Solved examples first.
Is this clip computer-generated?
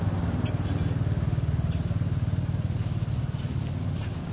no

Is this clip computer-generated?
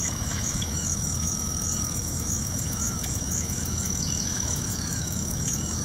yes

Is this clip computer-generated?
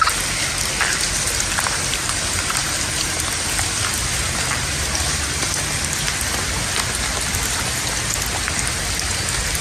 no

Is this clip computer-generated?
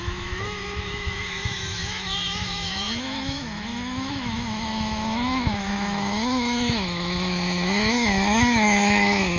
yes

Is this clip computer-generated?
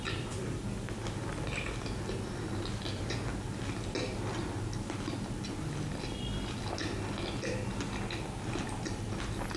no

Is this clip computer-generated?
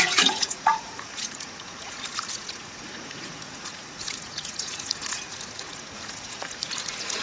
yes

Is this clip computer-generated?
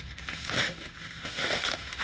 yes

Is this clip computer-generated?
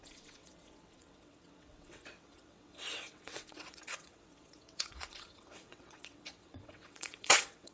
yes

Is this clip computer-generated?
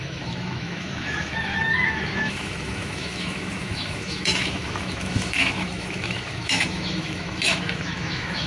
yes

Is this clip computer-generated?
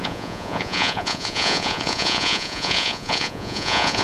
yes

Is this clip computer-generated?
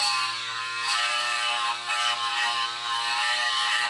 yes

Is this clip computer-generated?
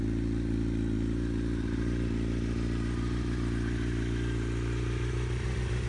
no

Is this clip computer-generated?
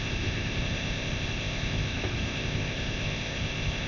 yes